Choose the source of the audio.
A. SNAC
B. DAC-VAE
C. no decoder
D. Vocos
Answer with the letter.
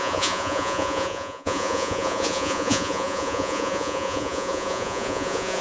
D